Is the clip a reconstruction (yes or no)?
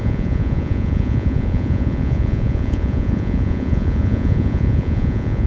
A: yes